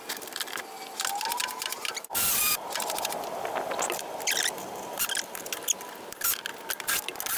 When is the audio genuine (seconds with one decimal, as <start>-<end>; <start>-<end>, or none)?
0.0-1.4; 5.5-7.4